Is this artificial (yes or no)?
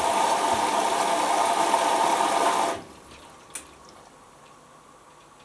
no